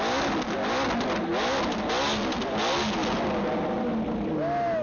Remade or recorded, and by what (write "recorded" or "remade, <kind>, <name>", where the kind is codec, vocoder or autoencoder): recorded